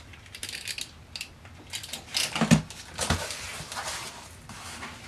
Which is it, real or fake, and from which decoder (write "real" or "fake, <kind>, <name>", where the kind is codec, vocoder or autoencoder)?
real